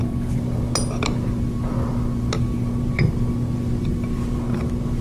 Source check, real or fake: real